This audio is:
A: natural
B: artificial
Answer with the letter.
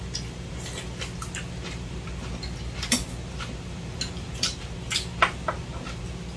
A